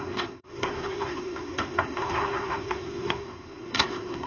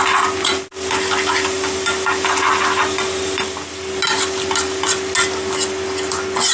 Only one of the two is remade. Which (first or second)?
first